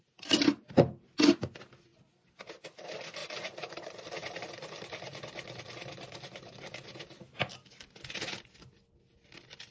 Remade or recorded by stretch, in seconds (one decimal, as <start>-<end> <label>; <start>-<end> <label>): 0.0-3.2 recorded; 3.2-4.0 remade; 4.0-9.7 recorded

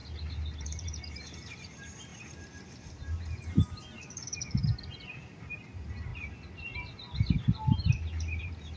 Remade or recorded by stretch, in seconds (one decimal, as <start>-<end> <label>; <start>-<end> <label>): 0.0-0.6 recorded; 0.6-2.1 remade; 2.1-4.6 recorded; 4.6-6.1 remade; 6.1-8.4 recorded; 8.4-8.8 remade